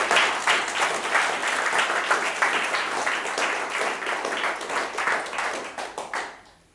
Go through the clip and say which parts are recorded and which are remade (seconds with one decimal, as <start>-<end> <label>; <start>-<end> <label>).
0.0-6.7 recorded